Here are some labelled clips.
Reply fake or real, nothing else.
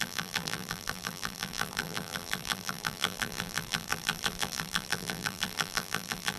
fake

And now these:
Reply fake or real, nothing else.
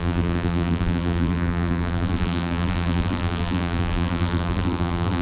fake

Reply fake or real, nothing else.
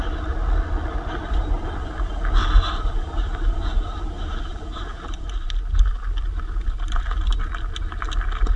real